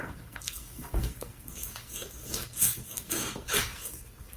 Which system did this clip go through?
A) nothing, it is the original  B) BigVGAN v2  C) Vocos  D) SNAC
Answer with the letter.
D